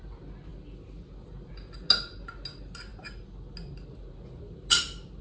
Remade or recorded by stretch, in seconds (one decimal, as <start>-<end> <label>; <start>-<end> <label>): 0.0-5.2 recorded